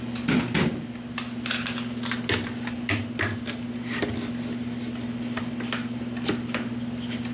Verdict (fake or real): real